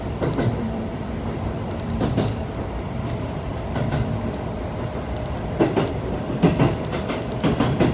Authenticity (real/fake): fake